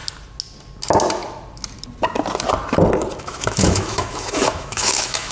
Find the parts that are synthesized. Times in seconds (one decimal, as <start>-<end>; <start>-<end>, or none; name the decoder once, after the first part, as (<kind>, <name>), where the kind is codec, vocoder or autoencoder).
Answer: 3.2-5.3 (autoencoder, DAC-VAE)